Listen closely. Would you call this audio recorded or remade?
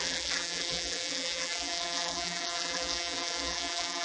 remade